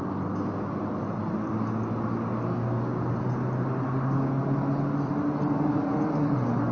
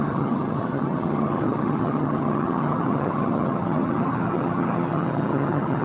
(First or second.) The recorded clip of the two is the first